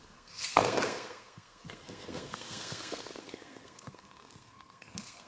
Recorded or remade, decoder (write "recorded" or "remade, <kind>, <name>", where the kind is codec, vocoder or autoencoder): remade, codec, SNAC